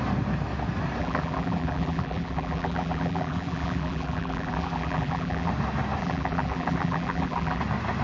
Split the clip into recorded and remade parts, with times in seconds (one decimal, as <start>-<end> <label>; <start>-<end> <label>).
0.0-1.0 recorded; 1.0-5.5 remade; 5.5-6.0 recorded; 6.0-7.6 remade; 7.6-8.0 recorded